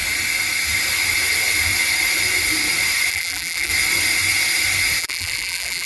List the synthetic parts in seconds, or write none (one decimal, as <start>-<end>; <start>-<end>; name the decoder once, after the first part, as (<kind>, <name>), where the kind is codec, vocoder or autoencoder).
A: 3.1-3.7 (vocoder, BigVGAN v2); 5.0-5.9